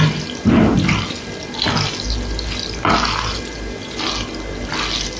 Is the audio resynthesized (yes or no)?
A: no